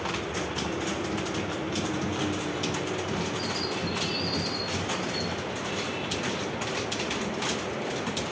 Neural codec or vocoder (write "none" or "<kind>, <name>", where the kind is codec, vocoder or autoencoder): none